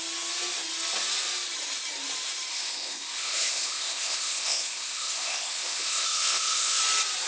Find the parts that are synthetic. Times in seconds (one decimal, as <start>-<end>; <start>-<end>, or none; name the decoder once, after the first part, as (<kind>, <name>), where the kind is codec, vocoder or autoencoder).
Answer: 2.5-6.8 (codec, ZipCodec)

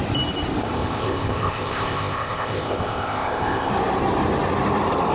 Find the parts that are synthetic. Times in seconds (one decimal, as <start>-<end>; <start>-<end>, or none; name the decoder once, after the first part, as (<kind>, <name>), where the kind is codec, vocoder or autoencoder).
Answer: 0.6-3.7 (codec, ZipCodec)